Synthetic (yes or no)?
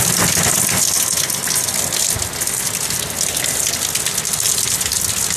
no